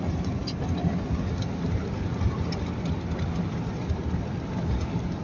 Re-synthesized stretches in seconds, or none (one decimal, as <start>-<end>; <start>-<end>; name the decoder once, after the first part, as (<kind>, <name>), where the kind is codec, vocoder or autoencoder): none